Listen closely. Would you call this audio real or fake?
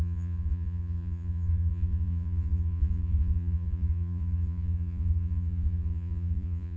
fake